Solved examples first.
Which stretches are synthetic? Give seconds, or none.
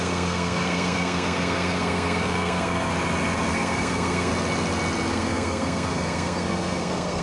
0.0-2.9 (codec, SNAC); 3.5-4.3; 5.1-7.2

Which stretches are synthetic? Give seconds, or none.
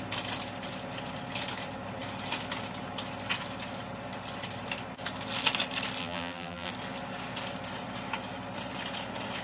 6.0-6.7 (vocoder, BigVGAN v2)